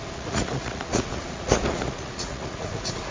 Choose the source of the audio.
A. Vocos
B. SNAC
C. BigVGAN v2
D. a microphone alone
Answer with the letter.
A